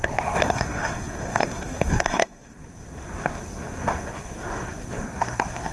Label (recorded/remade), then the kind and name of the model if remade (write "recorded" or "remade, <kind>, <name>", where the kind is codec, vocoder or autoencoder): remade, codec, SNAC